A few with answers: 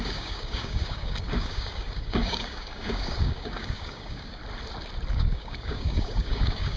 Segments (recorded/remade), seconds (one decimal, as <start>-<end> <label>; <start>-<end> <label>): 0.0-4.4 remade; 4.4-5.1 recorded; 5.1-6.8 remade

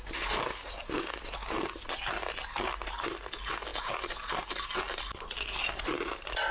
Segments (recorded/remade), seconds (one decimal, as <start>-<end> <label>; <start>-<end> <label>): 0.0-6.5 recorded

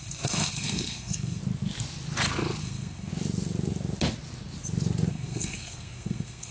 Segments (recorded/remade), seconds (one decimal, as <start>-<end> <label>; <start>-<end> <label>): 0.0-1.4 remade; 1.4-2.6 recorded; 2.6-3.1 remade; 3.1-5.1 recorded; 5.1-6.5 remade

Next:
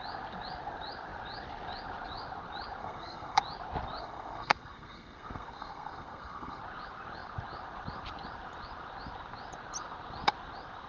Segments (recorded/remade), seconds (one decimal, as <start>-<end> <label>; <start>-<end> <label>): 0.0-2.8 recorded; 2.8-3.4 remade; 3.4-4.0 recorded; 4.0-6.6 remade; 6.6-10.9 recorded